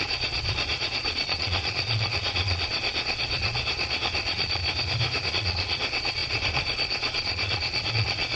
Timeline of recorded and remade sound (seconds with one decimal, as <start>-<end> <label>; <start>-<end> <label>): 0.0-4.6 remade; 4.6-5.3 recorded; 5.3-8.4 remade